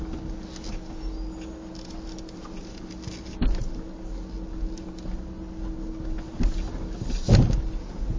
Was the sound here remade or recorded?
recorded